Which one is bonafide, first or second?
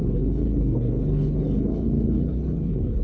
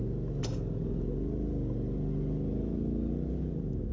second